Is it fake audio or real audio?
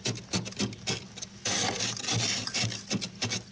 real